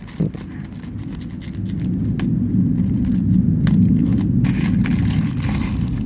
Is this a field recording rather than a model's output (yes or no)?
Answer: yes